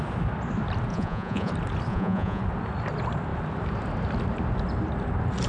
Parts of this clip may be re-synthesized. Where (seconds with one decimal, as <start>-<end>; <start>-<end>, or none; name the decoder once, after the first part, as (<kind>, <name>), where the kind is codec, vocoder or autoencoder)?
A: 0.9-1.5 (vocoder, Vocos); 1.9-2.4